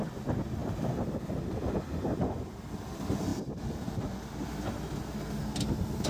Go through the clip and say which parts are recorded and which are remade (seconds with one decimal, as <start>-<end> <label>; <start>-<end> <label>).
0.0-6.1 recorded